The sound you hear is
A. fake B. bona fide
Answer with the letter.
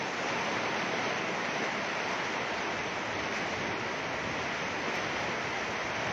B